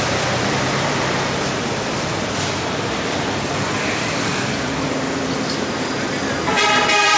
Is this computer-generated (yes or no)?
yes